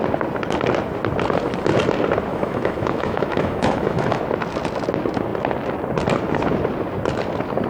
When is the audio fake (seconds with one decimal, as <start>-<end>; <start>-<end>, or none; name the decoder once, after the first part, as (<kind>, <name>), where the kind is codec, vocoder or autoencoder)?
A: 2.3-4.2 (autoencoder, DAC-VAE)